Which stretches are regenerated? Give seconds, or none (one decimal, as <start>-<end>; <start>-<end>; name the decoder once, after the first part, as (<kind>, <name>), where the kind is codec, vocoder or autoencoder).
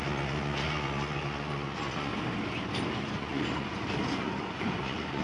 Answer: 0.0-2.1 (vocoder, Vocos); 2.9-5.2